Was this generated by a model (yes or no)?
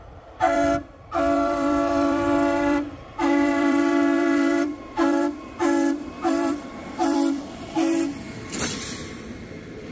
yes